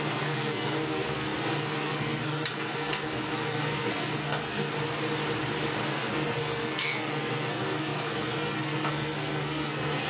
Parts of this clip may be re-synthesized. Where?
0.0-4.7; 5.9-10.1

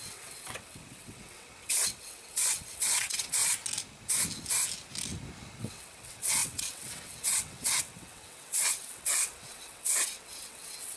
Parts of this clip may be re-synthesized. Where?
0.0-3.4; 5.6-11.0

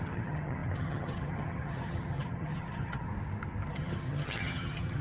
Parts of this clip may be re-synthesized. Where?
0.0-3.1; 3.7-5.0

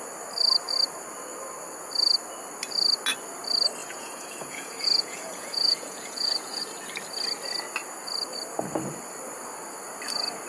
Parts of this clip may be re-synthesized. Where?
3.8-6.6